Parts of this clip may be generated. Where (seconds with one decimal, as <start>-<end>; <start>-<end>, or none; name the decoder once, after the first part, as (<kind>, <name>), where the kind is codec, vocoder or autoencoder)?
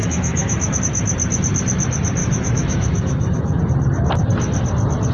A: 0.0-0.8 (autoencoder, DAC-VAE); 2.2-3.6